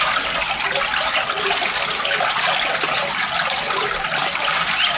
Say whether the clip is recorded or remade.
recorded